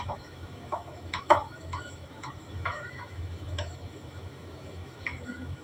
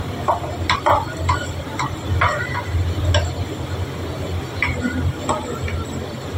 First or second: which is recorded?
second